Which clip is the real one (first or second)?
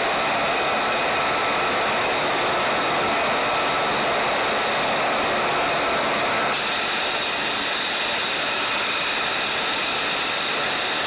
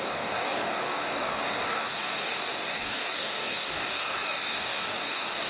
first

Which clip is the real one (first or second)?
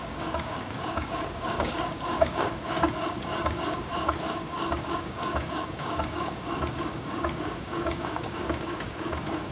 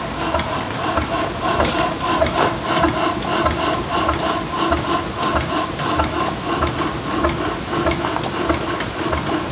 second